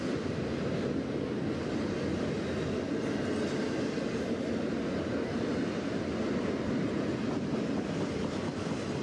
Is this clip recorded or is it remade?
recorded